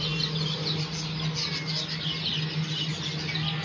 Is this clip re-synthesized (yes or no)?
no